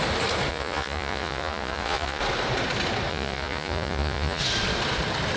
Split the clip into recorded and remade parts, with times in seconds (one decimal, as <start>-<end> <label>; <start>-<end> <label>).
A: 0.0-0.5 recorded; 0.5-2.2 remade; 2.2-3.1 recorded; 3.1-4.4 remade; 4.4-5.4 recorded